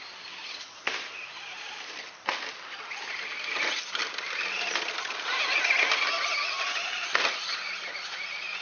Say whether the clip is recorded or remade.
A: recorded